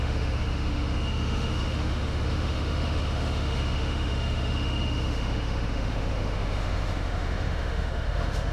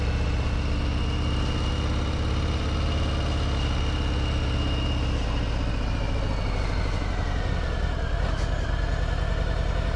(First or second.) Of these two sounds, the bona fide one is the second